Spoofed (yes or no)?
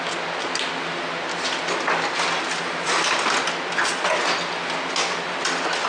no